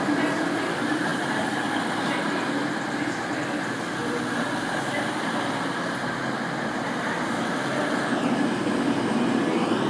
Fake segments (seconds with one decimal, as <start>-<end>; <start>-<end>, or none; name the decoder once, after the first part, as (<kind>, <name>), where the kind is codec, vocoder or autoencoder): none